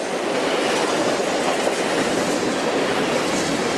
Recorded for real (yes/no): yes